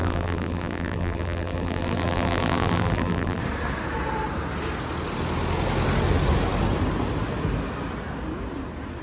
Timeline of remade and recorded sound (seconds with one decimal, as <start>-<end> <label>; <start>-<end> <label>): 0.0-3.4 remade; 3.4-9.0 recorded